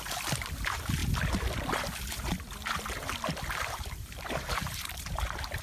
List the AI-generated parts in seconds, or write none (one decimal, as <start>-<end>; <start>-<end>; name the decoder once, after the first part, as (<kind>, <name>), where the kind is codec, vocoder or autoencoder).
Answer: none